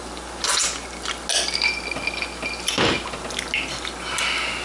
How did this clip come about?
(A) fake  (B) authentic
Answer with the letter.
B